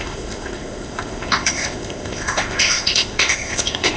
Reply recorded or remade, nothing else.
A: remade